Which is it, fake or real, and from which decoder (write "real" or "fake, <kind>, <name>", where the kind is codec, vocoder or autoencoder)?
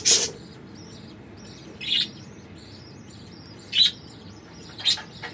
fake, vocoder, BigVGAN v2